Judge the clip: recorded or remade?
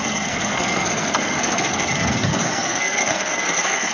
remade